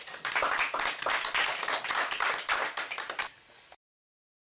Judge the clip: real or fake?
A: real